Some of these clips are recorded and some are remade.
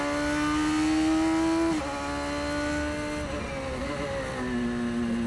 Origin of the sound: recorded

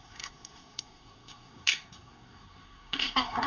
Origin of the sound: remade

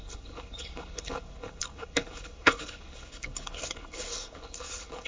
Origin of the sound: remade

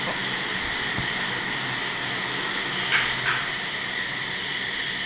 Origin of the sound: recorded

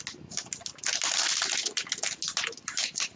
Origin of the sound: recorded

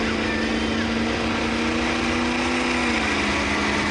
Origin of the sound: recorded